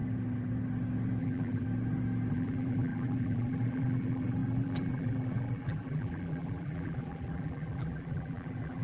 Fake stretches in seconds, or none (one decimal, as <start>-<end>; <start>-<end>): 1.2-1.7; 2.3-8.8